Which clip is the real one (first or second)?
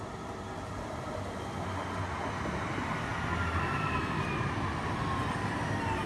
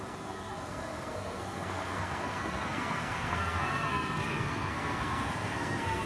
first